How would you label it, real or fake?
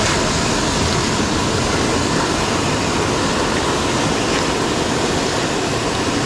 real